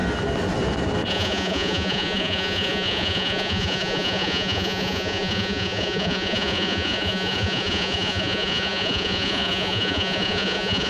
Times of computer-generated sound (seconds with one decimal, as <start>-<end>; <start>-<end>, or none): 1.1-10.9